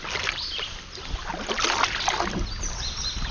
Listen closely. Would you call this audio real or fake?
real